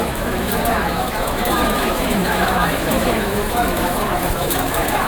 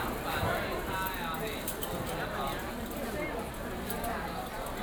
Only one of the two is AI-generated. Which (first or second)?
first